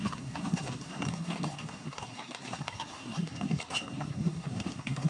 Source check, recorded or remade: remade